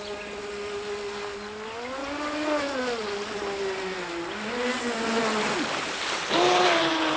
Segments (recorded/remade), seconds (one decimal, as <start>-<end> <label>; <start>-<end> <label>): 0.0-7.2 recorded